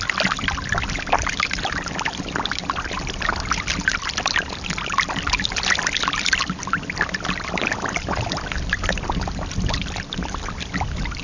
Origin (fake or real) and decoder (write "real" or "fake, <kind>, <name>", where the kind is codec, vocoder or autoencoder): real